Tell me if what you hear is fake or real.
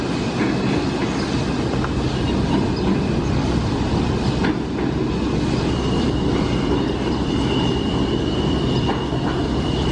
real